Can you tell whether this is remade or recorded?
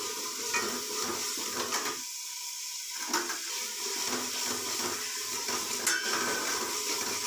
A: recorded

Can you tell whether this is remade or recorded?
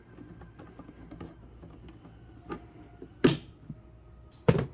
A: recorded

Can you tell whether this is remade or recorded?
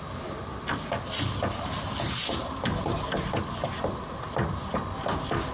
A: recorded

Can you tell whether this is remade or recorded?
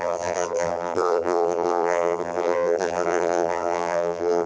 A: remade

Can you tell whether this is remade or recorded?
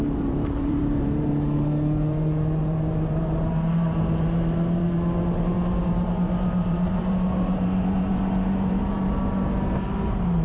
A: remade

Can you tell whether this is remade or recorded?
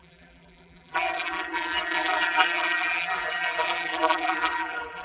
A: remade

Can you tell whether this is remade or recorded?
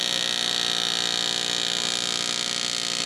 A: recorded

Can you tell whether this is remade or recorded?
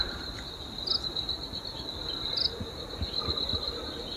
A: recorded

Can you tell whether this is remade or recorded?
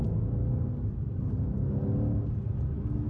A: recorded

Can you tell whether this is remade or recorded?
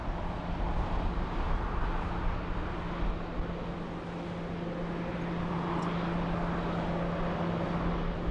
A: recorded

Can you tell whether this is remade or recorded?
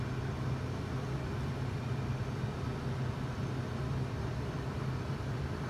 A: remade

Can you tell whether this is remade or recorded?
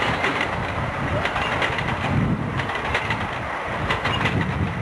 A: recorded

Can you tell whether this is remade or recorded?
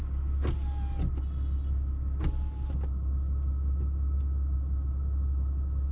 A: recorded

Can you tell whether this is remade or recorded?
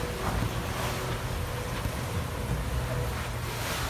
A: recorded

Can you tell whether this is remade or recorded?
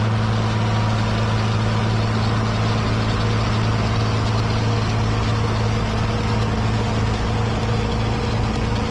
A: recorded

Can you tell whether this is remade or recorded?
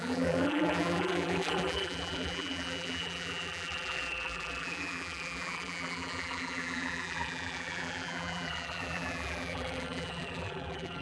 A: remade